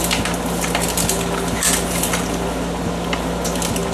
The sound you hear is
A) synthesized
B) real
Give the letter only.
B